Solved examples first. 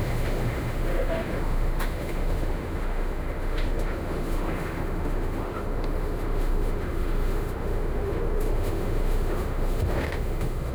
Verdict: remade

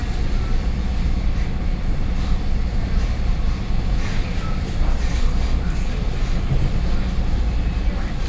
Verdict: recorded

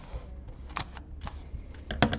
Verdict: recorded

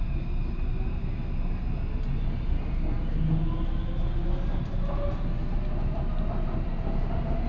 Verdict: recorded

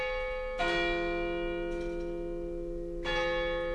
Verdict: recorded